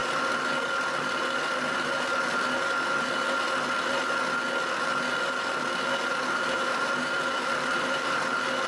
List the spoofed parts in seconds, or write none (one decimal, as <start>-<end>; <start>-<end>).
6.2-8.2